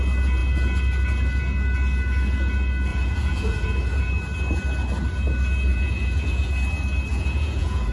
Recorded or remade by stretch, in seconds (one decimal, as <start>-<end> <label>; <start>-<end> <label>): 0.0-2.9 recorded; 2.9-4.1 remade; 4.1-5.7 recorded; 5.7-6.5 remade; 6.5-7.1 recorded; 7.1-7.9 remade